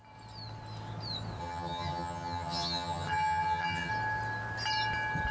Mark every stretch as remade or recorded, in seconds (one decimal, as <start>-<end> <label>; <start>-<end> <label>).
0.0-1.4 recorded; 1.4-3.9 remade; 3.9-5.3 recorded

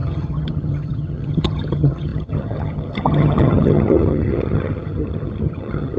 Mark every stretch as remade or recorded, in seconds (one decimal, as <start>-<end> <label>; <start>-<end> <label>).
0.0-6.0 remade

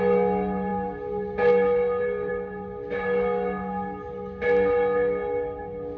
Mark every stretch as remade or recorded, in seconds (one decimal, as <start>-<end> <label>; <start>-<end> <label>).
0.0-6.0 recorded